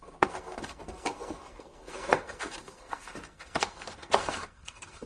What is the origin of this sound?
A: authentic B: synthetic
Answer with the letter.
B